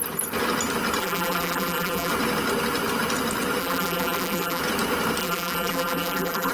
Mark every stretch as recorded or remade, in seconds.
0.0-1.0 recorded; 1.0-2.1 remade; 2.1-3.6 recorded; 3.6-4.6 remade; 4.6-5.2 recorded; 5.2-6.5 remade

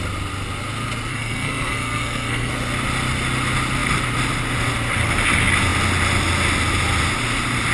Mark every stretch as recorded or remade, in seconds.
0.0-1.1 recorded; 1.1-2.5 remade; 2.5-7.7 recorded

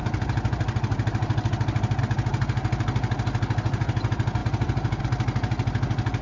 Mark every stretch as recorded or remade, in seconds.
0.0-6.2 recorded